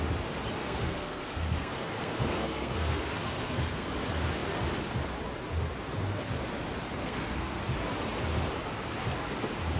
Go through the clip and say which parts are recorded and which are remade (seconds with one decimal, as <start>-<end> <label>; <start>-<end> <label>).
0.0-0.6 recorded; 0.6-3.9 remade; 3.9-7.0 recorded; 7.0-7.6 remade; 7.6-9.8 recorded